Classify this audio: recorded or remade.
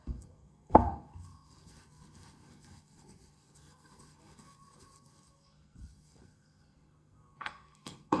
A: remade